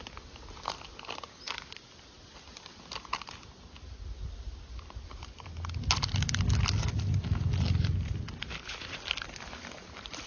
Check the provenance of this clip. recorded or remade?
recorded